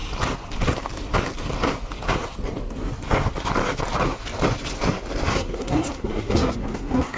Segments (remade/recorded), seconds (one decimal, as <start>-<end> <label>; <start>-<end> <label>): 0.0-5.3 recorded; 5.3-7.2 remade